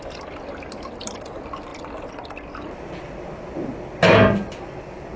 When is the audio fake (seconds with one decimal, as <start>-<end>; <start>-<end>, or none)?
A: none